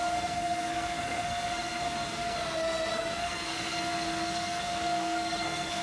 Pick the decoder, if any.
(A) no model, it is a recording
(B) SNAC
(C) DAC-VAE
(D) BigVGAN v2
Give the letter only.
B